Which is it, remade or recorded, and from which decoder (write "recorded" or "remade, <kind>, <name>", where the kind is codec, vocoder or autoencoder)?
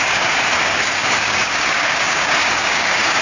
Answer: remade, codec, DAC